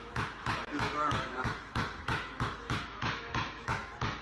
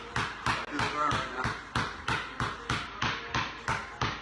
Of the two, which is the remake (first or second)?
first